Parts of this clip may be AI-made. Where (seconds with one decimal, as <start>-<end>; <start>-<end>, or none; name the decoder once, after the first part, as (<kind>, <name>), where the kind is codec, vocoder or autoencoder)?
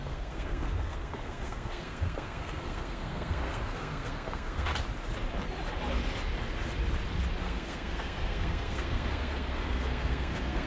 0.0-4.7 (codec, SNAC); 7.4-10.7